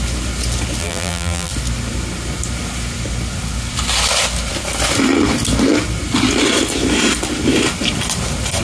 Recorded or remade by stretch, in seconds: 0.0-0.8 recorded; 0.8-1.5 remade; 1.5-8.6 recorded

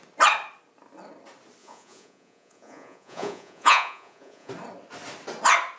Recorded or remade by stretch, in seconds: 0.0-1.6 recorded; 1.6-4.5 remade; 4.5-5.8 recorded